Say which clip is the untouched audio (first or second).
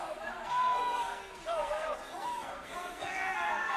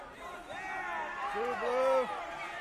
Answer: second